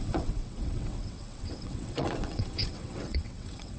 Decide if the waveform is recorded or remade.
remade